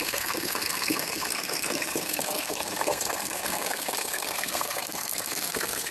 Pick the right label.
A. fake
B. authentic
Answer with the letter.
A